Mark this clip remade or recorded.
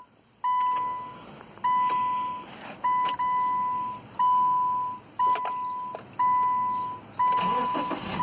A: recorded